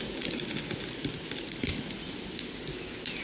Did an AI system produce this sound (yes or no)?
no